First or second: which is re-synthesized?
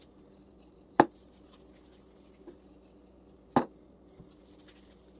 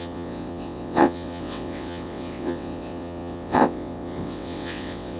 second